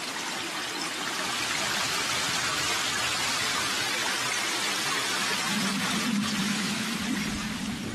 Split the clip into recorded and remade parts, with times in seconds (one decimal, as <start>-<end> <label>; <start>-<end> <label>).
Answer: 0.0-6.4 recorded; 6.4-6.9 remade; 6.9-7.9 recorded